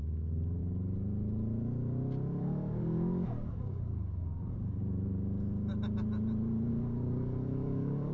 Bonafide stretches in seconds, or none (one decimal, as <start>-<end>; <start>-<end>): 0.6-2.4; 4.8-6.7